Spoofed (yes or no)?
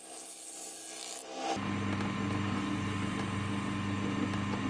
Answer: no